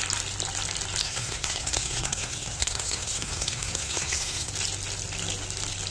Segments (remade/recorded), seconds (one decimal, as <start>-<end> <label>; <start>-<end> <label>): 0.0-1.0 recorded; 1.0-4.5 remade; 4.5-5.9 recorded